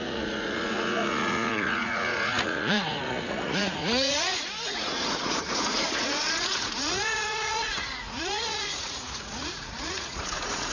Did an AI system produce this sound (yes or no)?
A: yes